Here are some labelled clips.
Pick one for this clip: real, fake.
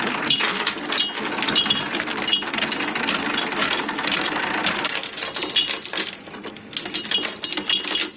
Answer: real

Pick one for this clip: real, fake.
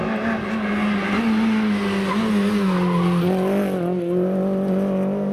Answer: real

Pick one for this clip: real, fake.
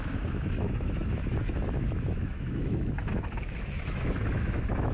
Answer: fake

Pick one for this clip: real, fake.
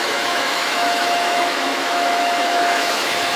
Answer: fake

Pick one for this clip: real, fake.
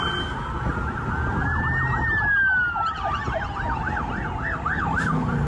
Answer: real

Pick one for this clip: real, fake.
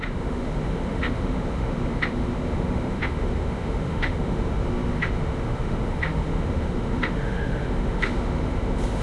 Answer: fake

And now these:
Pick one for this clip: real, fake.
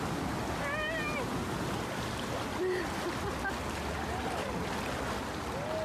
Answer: real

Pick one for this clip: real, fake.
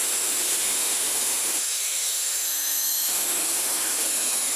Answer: fake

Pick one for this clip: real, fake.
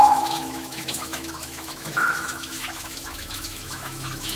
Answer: fake